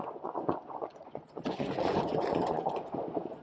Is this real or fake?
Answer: fake